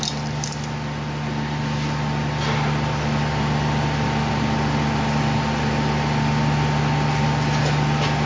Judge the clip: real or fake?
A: real